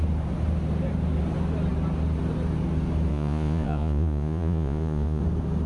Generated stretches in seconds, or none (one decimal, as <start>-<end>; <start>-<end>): 3.1-5.2